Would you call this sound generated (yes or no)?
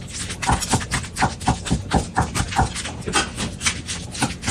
no